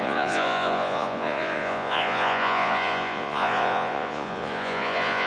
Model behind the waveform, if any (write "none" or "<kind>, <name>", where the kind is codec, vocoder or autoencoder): vocoder, Vocos